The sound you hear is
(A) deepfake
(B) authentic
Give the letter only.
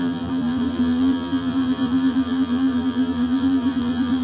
A